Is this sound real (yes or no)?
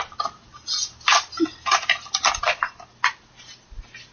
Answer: yes